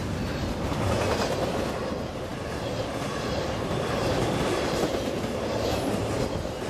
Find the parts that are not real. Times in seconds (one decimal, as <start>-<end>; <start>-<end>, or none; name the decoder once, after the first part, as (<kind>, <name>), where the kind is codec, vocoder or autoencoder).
none